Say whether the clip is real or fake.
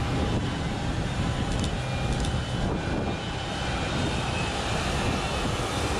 real